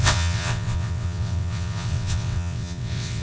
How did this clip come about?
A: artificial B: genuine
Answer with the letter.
A